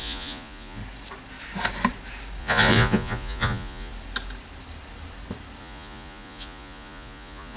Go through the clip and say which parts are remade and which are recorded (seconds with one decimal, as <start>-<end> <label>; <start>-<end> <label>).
0.0-0.8 remade; 0.8-2.4 recorded; 2.4-3.9 remade; 3.9-5.6 recorded; 5.6-7.6 remade